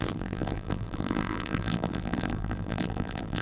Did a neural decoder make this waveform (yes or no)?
yes